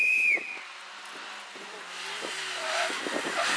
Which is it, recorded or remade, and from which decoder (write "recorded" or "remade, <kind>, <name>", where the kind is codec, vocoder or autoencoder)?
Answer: recorded